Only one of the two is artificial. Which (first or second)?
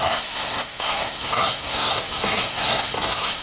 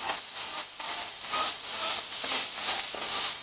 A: first